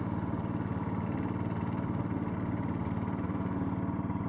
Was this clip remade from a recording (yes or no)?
no